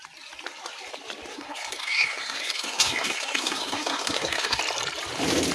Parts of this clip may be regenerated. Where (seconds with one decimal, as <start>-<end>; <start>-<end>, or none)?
1.3-4.6